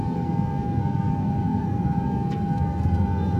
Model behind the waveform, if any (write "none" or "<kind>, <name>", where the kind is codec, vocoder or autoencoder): codec, SNAC